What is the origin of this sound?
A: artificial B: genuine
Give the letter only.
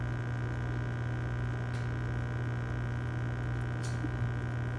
B